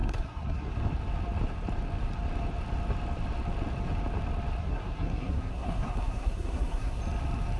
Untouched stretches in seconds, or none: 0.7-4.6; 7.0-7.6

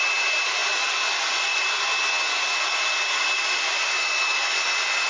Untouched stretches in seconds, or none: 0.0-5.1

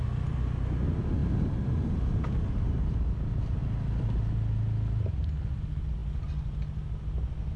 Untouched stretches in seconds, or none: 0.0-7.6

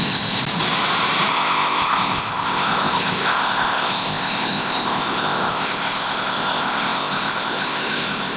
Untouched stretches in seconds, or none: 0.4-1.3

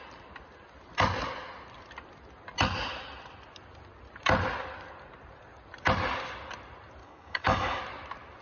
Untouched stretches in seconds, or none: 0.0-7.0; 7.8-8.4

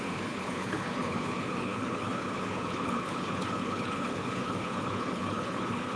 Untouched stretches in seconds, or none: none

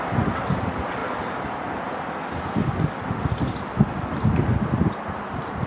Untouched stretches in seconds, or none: 0.0-1.0; 1.8-5.7